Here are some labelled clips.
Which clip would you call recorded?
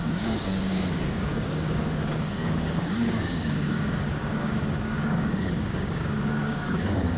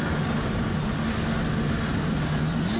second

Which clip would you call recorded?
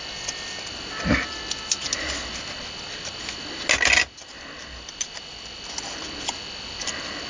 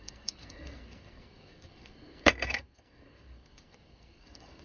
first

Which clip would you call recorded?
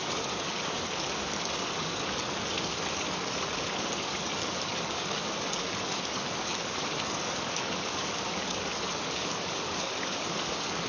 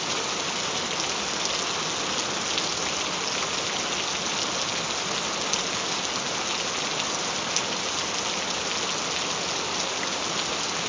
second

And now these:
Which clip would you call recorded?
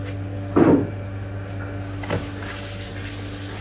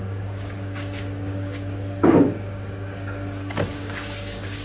first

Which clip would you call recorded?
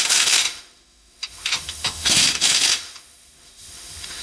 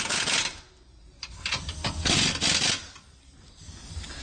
second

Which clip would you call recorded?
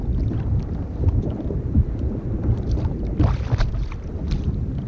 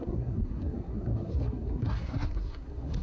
first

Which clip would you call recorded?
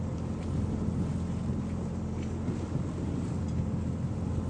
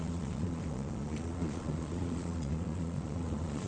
first